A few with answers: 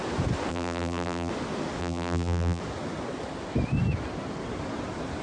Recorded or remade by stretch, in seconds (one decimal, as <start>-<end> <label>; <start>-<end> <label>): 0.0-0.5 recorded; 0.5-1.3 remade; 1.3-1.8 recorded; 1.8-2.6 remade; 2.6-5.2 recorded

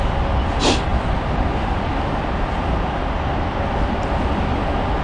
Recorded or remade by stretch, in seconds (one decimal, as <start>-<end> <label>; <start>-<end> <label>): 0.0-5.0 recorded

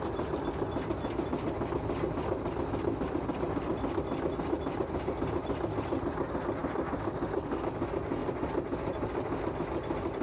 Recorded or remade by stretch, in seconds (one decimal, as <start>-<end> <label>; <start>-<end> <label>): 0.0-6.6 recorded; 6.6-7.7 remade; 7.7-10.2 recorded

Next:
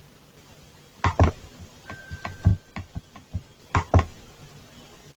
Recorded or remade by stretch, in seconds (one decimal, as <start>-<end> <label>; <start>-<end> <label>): 0.0-5.2 recorded